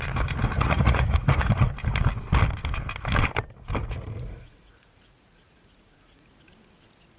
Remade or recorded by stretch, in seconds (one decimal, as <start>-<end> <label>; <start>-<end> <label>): 0.0-0.5 recorded; 0.5-1.7 remade; 1.7-3.8 recorded; 3.8-6.3 remade; 6.3-7.2 recorded